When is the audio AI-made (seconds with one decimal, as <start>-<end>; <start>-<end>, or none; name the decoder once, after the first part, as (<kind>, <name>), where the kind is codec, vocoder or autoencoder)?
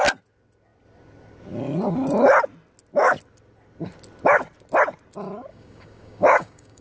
5.5-6.8 (codec, DAC)